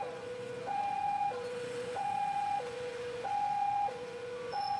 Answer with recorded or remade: remade